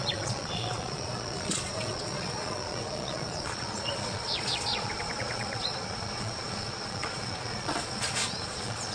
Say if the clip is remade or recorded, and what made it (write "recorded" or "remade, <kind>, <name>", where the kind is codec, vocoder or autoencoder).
remade, vocoder, Vocos